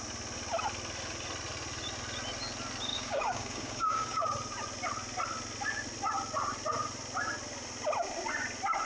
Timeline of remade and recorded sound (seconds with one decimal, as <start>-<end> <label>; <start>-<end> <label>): 0.0-2.9 recorded; 2.9-4.2 remade; 4.2-8.9 recorded